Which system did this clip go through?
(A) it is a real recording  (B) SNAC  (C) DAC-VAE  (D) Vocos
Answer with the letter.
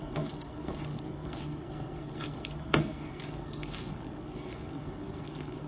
B